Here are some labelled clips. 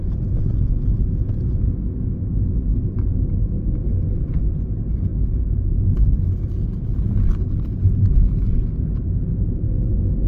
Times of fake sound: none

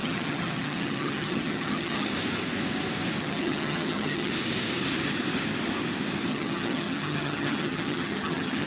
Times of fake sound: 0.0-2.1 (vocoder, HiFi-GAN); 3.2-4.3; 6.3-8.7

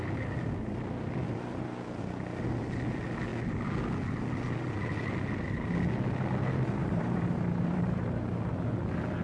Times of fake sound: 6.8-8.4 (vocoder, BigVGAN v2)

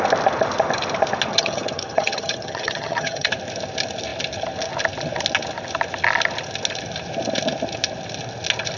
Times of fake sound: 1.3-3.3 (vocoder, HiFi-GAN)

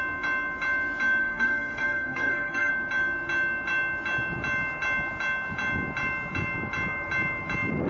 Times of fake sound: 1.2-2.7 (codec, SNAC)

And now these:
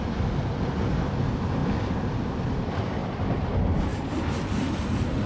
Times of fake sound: 3.0-3.5 (vocoder, BigVGAN v2); 3.9-4.8

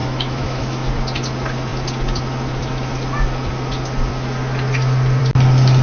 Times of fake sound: 0.0-0.9 (autoencoder, DAC-VAE)